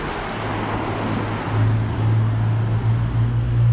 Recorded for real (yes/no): yes